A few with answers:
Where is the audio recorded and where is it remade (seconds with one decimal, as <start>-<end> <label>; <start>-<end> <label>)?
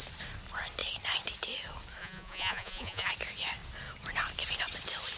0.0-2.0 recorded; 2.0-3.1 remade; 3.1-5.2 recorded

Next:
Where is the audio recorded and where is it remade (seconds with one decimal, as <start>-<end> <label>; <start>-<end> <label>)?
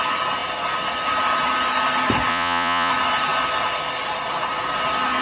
0.0-2.3 recorded; 2.3-2.9 remade; 2.9-5.2 recorded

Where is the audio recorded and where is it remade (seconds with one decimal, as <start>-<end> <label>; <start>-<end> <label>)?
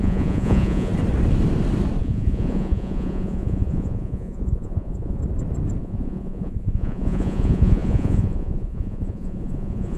0.0-0.9 remade; 0.9-2.0 recorded; 2.0-5.2 remade; 5.2-5.8 recorded; 5.8-10.0 remade